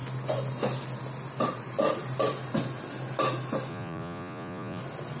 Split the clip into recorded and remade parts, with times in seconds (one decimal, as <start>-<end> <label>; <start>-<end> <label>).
0.0-3.7 recorded; 3.7-4.8 remade; 4.8-5.2 recorded